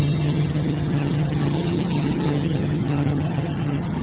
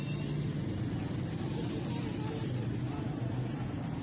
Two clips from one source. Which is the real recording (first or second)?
second